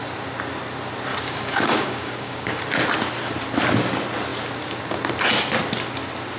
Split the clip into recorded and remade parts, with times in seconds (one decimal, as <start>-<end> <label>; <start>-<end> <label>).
0.0-1.1 recorded; 1.1-2.6 remade; 2.6-6.4 recorded